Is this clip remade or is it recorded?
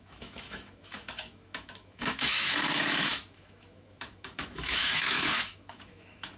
remade